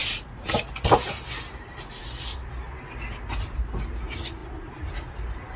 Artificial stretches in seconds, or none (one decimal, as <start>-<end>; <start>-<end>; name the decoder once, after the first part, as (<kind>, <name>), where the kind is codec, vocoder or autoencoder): none